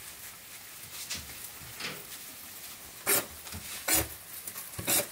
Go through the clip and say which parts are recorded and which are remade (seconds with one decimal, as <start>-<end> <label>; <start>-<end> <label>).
0.0-5.1 recorded